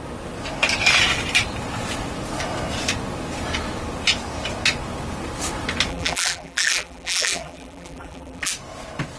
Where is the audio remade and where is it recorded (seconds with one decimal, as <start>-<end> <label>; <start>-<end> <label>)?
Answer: 0.0-5.9 recorded; 5.9-8.5 remade; 8.5-9.2 recorded